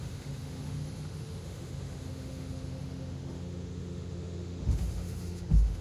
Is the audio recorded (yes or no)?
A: no